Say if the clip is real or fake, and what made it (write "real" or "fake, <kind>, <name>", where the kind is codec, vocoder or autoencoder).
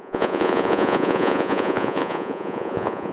fake, vocoder, Vocos